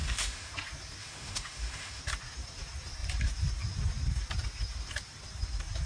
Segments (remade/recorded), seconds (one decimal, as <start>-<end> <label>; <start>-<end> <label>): 0.0-0.5 remade; 0.5-1.0 recorded; 1.0-2.0 remade; 2.0-5.9 recorded